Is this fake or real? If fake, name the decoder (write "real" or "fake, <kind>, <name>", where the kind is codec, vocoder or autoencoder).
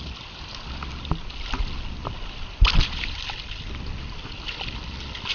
real